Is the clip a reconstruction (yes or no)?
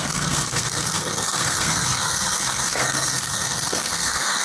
yes